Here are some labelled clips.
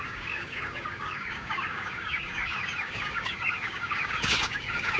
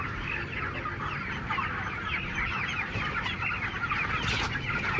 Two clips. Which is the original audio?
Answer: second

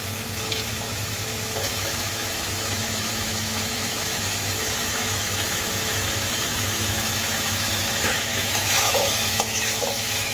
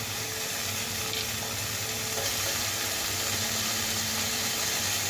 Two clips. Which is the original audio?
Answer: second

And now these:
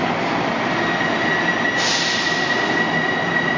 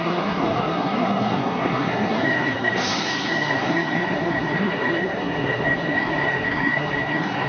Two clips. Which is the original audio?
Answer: first